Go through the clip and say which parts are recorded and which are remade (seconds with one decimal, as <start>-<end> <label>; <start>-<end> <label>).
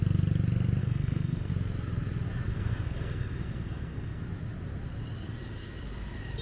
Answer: 0.0-0.8 recorded; 0.8-1.5 remade; 1.5-2.5 recorded; 2.5-4.2 remade; 4.2-6.4 recorded